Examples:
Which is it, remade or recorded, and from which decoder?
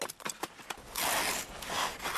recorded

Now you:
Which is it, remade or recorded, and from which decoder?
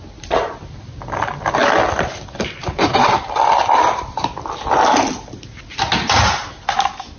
recorded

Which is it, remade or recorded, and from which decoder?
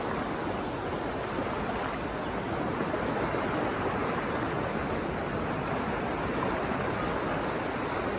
recorded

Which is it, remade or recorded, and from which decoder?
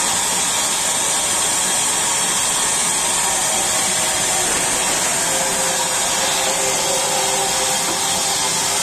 recorded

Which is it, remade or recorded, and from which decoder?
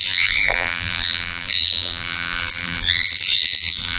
remade, vocoder, BigVGAN v2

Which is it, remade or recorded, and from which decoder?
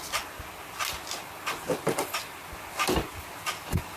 recorded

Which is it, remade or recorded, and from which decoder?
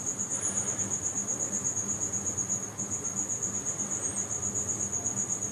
remade, vocoder, BigVGAN v2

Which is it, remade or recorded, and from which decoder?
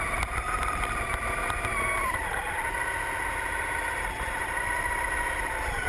recorded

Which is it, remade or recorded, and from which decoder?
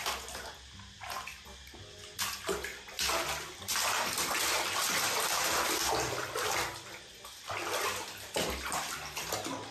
recorded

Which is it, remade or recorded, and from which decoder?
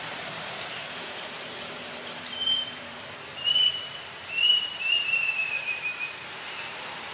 remade, vocoder, BigVGAN v2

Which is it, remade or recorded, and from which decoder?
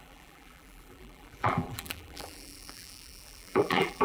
remade, vocoder, BigVGAN v2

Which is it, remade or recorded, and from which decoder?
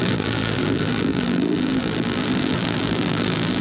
remade, vocoder, BigVGAN v2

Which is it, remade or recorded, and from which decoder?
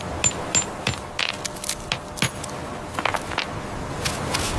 recorded